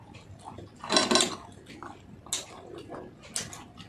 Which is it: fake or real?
real